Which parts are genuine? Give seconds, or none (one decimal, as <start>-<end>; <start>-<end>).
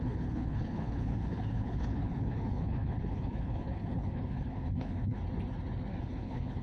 5.2-6.0